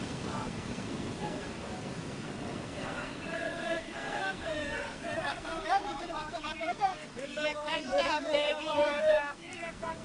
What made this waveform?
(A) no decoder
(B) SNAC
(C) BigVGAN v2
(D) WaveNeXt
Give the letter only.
B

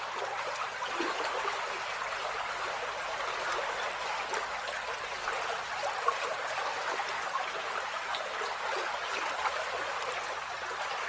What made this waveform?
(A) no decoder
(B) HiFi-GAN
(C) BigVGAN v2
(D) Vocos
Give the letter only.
A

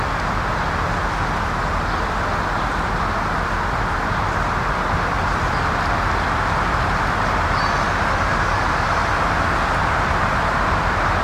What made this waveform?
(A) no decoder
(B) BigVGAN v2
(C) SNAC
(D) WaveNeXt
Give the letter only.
A